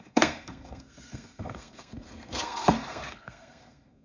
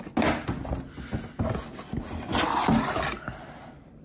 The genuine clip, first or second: second